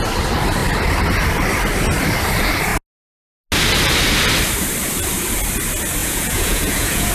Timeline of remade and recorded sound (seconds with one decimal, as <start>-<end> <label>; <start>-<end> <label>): 0.0-6.0 recorded; 6.0-7.1 remade